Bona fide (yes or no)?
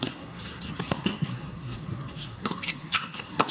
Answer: no